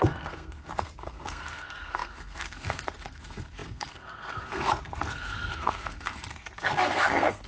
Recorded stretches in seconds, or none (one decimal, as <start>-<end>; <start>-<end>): none